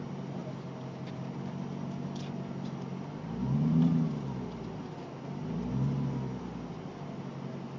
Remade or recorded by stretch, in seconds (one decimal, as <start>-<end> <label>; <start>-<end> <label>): 0.0-7.8 recorded